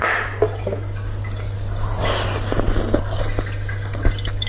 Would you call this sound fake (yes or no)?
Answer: no